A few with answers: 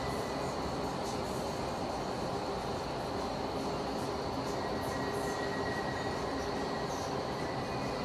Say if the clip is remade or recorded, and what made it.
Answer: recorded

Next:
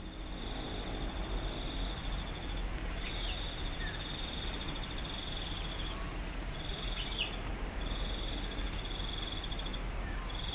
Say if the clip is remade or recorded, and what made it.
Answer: recorded